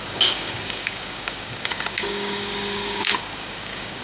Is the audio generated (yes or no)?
yes